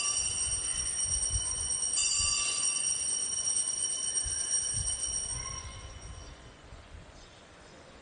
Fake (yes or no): yes